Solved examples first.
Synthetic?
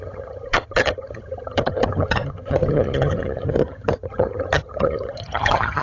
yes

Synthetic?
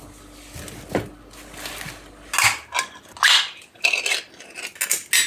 no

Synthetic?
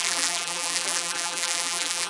yes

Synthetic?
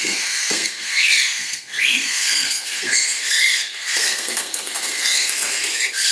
yes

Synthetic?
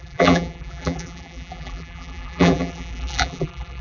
yes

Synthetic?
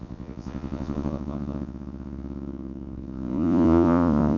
yes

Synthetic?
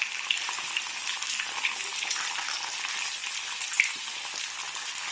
no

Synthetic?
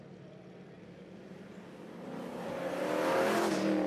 no